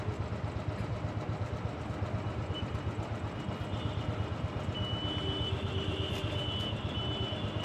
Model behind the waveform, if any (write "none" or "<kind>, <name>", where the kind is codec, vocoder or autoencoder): none